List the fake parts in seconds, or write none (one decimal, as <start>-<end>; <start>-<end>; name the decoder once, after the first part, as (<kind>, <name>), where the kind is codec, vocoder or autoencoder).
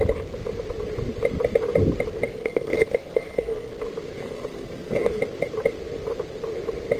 2.3-3.7 (codec, SNAC); 4.2-5.2